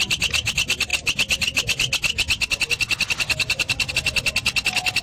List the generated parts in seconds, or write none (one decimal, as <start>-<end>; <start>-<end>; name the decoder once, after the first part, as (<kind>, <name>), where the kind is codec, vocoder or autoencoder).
none